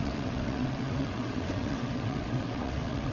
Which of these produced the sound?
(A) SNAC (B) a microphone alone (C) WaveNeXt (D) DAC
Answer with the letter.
C